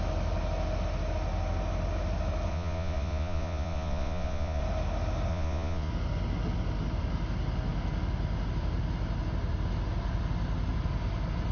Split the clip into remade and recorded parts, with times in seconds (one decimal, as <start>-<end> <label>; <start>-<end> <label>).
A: 0.0-2.5 recorded; 2.5-4.6 remade; 4.6-5.3 recorded; 5.3-5.9 remade; 5.9-11.5 recorded